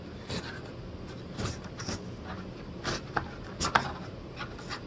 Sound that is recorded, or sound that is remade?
recorded